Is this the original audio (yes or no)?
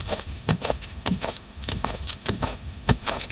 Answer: no